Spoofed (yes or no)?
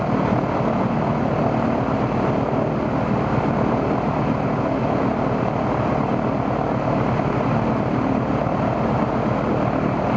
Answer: no